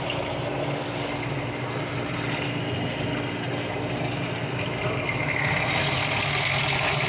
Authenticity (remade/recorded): recorded